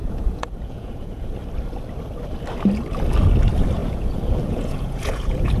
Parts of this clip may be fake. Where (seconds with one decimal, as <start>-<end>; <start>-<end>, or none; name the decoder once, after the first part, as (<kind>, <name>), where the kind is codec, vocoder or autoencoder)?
0.0-1.3 (vocoder, Vocos); 3.8-5.6